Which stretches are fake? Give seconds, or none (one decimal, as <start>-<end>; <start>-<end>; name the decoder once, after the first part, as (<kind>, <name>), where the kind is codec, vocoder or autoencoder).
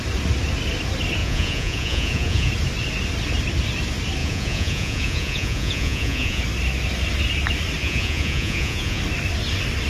1.2-2.5 (vocoder, Vocos); 4.2-6.4; 7.8-9.0